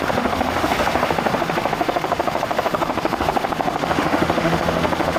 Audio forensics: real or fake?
fake